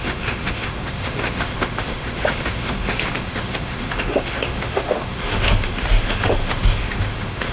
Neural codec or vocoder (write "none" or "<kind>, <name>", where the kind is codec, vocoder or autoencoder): autoencoder, DAC-VAE